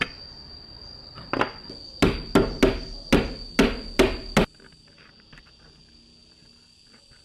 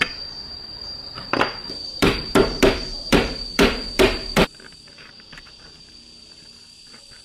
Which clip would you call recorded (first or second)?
first